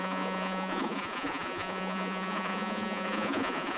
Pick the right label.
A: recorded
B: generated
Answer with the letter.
B